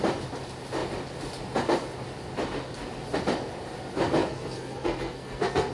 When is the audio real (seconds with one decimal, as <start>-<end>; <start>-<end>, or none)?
0.0-4.2